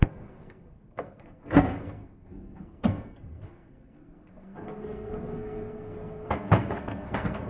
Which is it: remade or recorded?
remade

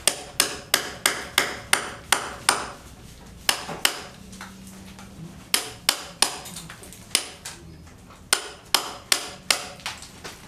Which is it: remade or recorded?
recorded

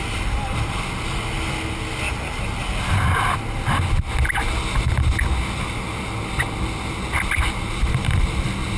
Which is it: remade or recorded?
recorded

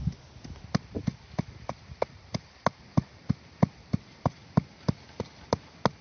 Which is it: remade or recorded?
recorded